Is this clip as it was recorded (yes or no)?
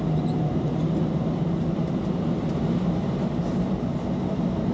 no